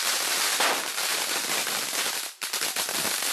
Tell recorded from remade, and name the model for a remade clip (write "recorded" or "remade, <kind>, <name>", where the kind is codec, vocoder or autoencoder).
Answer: recorded